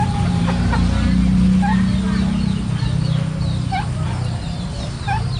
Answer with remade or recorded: recorded